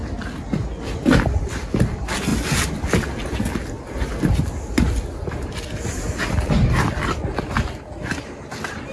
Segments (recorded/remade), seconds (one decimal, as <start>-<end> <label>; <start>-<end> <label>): 0.0-8.9 recorded